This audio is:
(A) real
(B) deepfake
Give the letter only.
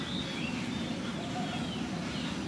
A